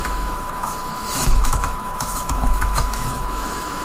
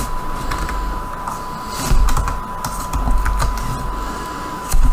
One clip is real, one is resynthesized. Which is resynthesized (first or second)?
first